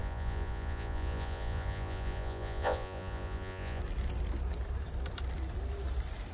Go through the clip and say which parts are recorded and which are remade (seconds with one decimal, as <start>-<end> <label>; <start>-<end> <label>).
0.0-3.8 remade; 3.8-6.3 recorded